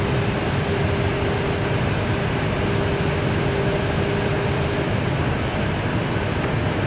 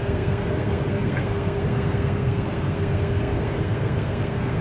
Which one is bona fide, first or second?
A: first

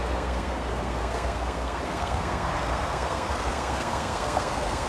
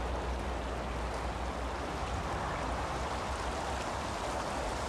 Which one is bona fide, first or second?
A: second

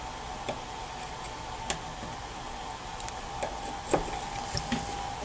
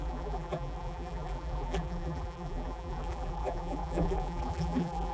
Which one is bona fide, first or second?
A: first